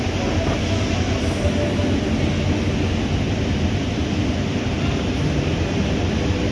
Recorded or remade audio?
recorded